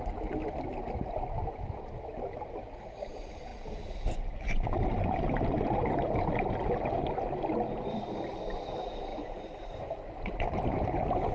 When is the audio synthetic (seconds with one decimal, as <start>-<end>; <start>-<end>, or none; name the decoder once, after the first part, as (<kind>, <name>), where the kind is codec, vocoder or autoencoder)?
9.1-11.3 (vocoder, BigVGAN v2)